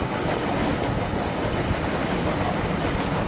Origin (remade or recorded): recorded